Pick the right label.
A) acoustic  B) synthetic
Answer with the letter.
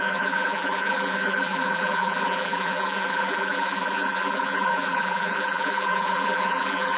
B